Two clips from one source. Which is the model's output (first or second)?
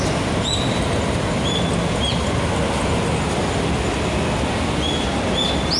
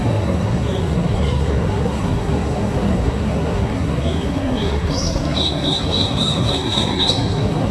second